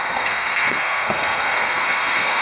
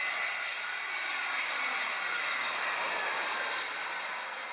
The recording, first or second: second